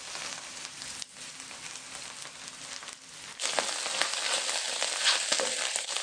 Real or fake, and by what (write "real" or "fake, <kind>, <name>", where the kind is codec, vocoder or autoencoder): real